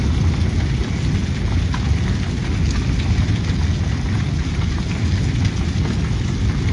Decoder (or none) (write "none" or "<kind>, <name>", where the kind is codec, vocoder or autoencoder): none